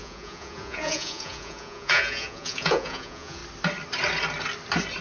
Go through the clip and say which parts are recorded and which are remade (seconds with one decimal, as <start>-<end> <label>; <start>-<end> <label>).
0.0-3.4 remade; 3.4-5.0 recorded